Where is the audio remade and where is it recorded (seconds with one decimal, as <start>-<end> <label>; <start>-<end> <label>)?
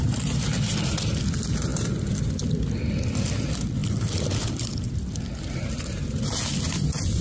0.0-1.7 recorded; 1.7-2.4 remade; 2.4-3.8 recorded; 3.8-4.5 remade; 4.5-7.2 recorded